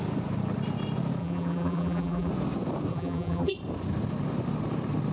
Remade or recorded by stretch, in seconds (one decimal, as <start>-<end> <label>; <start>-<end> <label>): 0.0-1.2 recorded; 1.2-2.3 remade; 2.3-2.9 recorded; 2.9-3.5 remade; 3.5-5.1 recorded